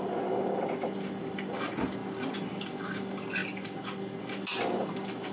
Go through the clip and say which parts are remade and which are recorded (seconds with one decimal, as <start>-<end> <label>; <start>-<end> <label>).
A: 0.0-5.3 recorded